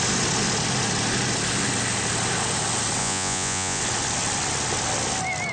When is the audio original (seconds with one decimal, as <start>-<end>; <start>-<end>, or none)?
0.0-3.0; 3.8-5.5